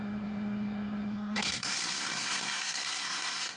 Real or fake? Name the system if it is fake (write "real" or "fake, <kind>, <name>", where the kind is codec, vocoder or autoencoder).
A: fake, codec, SNAC